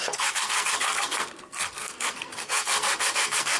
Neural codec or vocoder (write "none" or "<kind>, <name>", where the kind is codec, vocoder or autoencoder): codec, SNAC